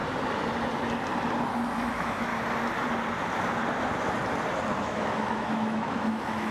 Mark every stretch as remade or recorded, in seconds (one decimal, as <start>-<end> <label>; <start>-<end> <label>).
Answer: 0.0-1.9 recorded; 1.9-2.3 remade; 2.3-4.8 recorded; 4.8-6.5 remade